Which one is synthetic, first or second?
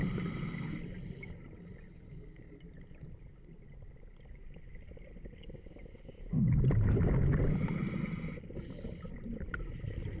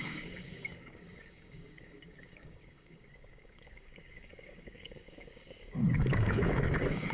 second